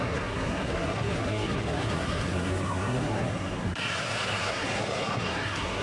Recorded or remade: remade